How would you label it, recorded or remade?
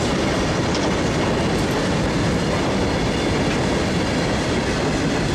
recorded